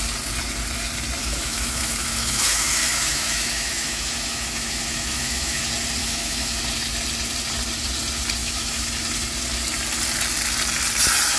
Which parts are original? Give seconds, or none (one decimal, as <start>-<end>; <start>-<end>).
0.0-1.2; 5.6-6.0; 6.6-8.4; 8.9-11.4